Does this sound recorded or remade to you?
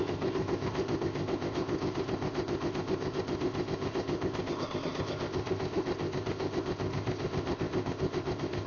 remade